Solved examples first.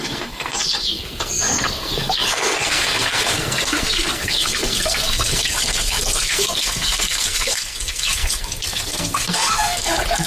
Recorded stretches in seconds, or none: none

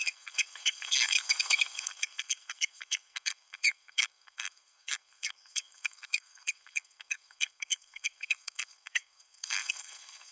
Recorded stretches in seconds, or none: none

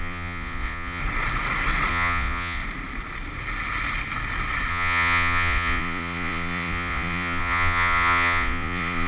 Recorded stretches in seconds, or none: 1.0-1.9; 2.6-4.7

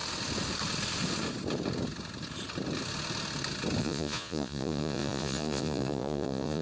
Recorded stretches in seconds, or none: 0.0-3.8